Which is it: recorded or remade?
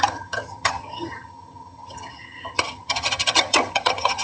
remade